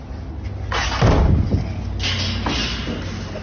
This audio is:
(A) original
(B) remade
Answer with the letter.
A